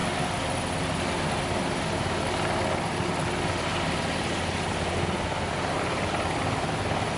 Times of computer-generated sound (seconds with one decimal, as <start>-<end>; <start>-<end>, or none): none